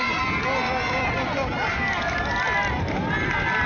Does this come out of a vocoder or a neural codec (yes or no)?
no